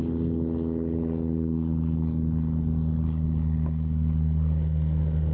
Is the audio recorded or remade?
recorded